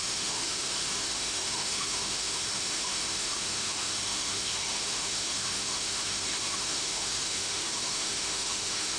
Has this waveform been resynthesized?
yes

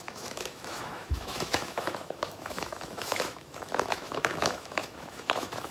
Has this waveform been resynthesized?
yes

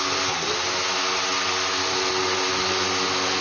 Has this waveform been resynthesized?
no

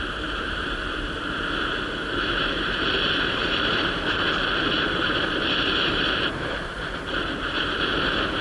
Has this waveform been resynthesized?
yes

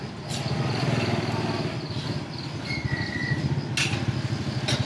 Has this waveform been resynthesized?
no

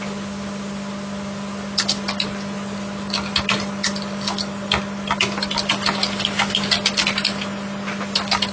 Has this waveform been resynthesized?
no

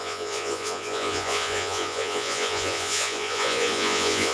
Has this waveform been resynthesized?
yes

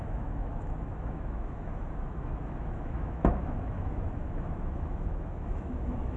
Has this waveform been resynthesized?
yes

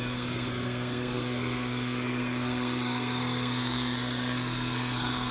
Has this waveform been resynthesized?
yes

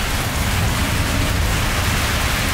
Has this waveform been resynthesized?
no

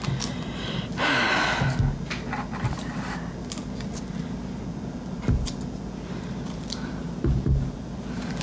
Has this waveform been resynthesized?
no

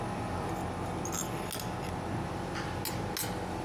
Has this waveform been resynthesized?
no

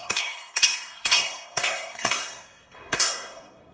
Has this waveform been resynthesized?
yes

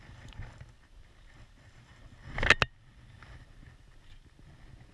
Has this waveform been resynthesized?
no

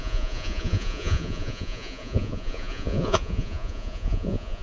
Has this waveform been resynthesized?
yes